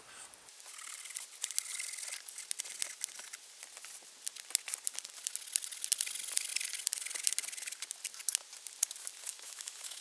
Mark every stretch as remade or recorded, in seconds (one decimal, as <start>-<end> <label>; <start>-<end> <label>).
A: 0.0-9.3 recorded; 9.3-10.0 remade